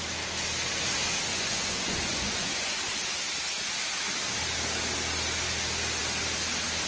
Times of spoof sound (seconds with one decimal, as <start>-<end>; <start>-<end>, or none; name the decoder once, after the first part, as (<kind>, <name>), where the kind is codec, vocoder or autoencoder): 1.3-2.8 (vocoder, Vocos)